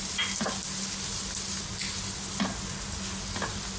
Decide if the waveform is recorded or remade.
recorded